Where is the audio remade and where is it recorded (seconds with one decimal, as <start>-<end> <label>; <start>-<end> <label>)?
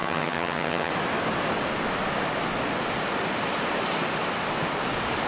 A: 0.0-0.9 remade; 0.9-5.3 recorded